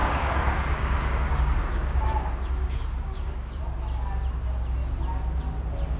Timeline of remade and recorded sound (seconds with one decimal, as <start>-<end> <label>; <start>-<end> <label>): 0.0-3.6 remade; 3.6-6.0 recorded